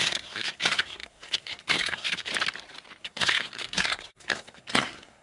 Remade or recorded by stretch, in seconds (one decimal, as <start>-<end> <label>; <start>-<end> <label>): 0.0-2.3 remade; 2.3-3.0 recorded; 3.0-5.2 remade